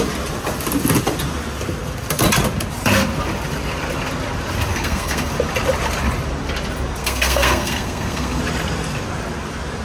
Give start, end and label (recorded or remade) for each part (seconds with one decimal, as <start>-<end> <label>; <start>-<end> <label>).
0.0-4.7 recorded; 4.7-5.3 remade; 5.3-7.0 recorded; 7.0-8.4 remade; 8.4-9.8 recorded